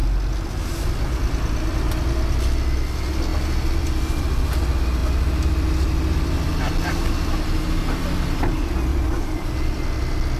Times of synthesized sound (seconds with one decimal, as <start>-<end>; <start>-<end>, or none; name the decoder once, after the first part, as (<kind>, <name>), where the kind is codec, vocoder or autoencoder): 8.9-9.5 (vocoder, BigVGAN v2)